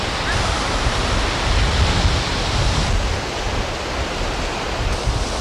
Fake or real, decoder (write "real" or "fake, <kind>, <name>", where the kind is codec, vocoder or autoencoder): real